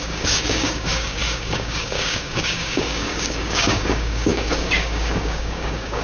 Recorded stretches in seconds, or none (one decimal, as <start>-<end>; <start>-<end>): none